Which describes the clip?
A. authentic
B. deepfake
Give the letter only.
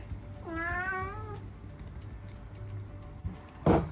A